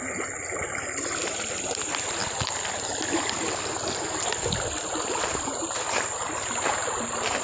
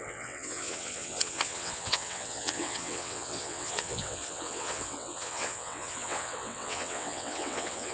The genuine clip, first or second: first